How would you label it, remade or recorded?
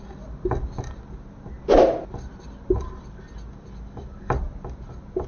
recorded